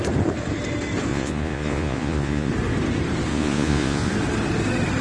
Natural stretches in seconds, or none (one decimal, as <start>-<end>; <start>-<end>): 0.0-1.1; 2.5-3.3; 4.1-5.0